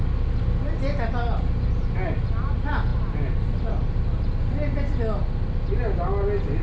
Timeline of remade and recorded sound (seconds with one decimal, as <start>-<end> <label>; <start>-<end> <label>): 0.0-6.6 recorded